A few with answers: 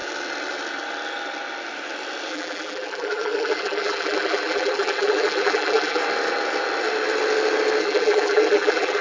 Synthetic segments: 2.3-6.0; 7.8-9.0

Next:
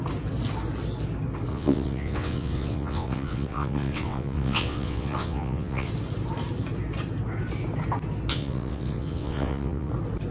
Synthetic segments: 1.5-5.9; 8.3-9.9

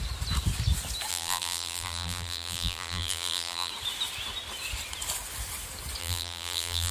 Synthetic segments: 1.1-3.7; 6.0-6.9

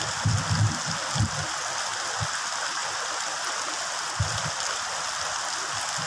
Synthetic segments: none

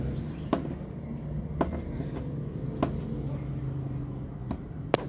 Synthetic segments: none